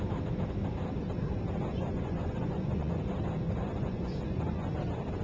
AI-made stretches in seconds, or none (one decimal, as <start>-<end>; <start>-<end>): 1.7-3.0; 3.7-4.8